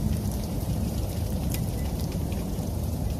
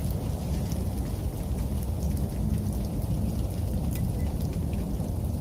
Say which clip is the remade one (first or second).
first